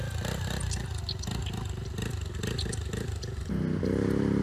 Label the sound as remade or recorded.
recorded